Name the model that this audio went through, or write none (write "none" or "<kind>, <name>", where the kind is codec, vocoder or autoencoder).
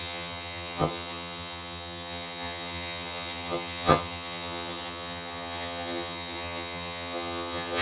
vocoder, HiFi-GAN